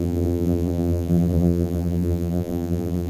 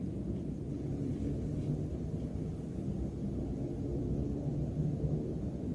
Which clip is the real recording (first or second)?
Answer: second